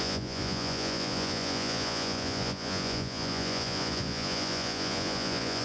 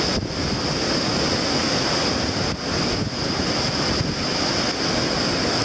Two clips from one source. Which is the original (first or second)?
second